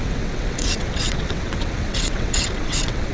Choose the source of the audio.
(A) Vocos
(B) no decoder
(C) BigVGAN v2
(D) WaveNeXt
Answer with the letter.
D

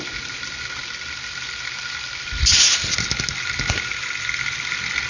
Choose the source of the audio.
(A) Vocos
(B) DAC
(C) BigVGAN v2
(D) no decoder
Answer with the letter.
D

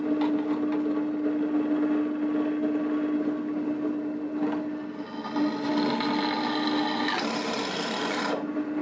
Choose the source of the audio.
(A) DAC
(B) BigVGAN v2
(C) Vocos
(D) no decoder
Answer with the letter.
D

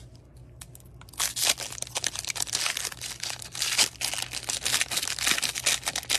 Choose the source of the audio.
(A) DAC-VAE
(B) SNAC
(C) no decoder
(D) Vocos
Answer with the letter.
C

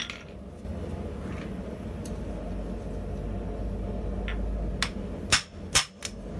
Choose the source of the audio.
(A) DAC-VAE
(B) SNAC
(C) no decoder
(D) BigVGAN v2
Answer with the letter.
C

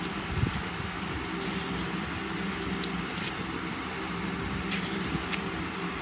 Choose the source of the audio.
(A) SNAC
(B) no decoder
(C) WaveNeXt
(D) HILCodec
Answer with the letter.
B